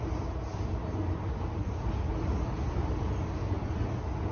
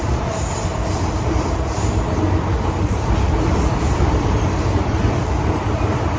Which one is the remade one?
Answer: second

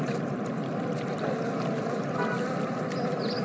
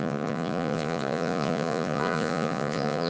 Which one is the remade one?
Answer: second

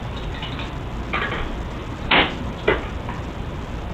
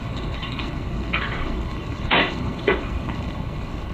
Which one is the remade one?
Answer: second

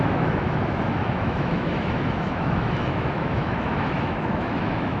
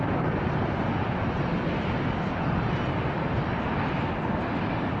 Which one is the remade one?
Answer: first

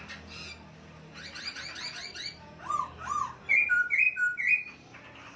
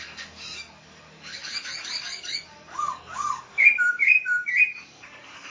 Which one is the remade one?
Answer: second